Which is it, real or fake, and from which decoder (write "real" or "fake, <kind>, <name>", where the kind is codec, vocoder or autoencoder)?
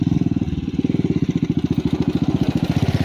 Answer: real